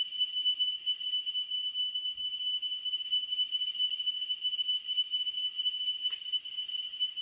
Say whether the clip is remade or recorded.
recorded